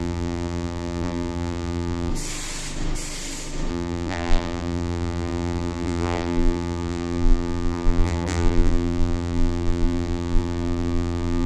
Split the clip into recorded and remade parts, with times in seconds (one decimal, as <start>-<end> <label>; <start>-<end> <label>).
0.0-2.1 remade; 2.1-3.7 recorded; 3.7-11.5 remade